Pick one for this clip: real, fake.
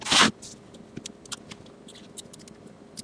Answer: real